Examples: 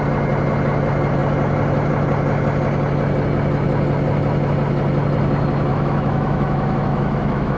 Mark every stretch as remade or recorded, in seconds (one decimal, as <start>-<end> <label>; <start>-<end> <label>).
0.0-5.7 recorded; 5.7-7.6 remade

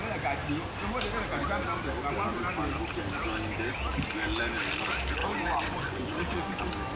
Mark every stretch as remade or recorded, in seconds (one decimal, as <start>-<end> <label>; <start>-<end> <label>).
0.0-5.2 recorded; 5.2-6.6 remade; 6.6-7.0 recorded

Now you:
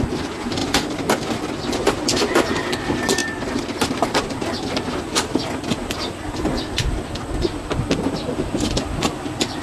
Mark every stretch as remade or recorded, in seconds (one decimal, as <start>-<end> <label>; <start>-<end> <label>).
0.0-0.6 recorded; 0.6-1.5 remade; 1.5-3.2 recorded; 3.2-7.3 remade; 7.3-9.6 recorded

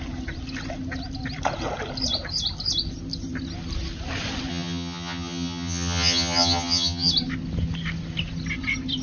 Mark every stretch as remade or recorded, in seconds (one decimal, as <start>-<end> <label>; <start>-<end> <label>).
0.0-4.5 recorded; 4.5-7.1 remade; 7.1-9.0 recorded

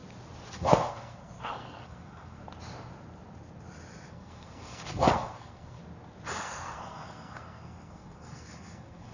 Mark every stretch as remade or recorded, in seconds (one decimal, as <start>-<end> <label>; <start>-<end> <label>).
0.0-0.5 recorded; 0.5-2.4 remade; 2.4-4.1 recorded; 4.1-5.8 remade; 5.8-6.4 recorded; 6.4-9.1 remade

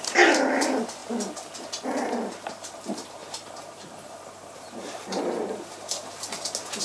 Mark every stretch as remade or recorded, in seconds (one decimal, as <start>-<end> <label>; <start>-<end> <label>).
0.0-1.0 remade; 1.0-2.5 recorded; 2.5-6.8 remade